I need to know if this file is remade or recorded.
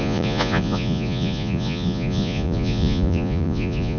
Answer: remade